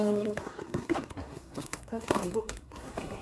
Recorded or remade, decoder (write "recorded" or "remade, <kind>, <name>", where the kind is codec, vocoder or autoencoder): remade, codec, SNAC